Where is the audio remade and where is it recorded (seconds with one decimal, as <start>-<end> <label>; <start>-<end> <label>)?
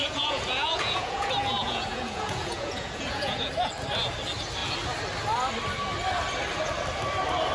0.0-3.5 remade; 3.5-7.5 recorded